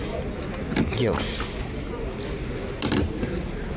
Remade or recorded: recorded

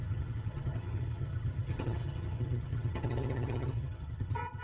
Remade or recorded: remade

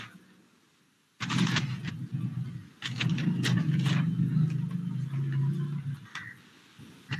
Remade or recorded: recorded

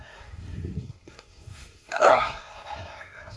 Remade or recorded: remade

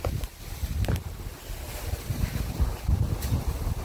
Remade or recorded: recorded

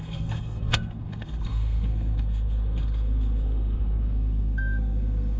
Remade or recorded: remade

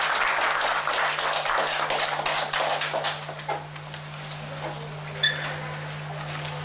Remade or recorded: recorded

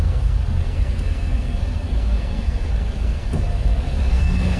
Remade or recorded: remade